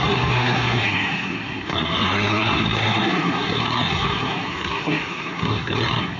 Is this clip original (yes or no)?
no